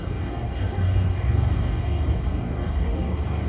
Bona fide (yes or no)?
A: no